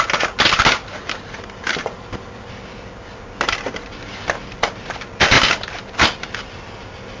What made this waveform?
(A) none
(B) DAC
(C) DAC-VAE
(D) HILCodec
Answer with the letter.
A